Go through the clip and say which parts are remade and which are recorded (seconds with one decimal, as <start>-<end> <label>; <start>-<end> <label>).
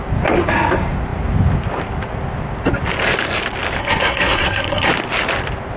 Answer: 0.0-3.8 recorded; 3.8-4.9 remade; 4.9-5.8 recorded